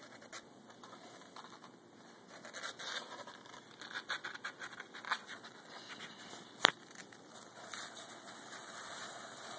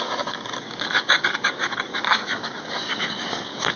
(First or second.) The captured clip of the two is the first